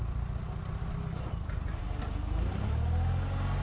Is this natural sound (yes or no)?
yes